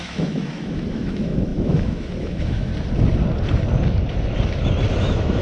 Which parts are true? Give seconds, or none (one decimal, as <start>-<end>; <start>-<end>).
2.7-5.0